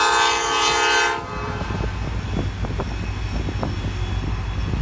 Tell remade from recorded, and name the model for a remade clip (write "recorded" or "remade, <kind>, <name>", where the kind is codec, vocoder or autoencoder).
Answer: recorded